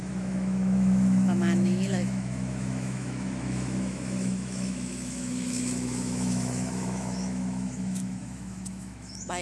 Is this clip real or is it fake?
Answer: fake